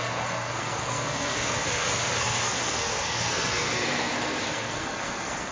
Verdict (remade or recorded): remade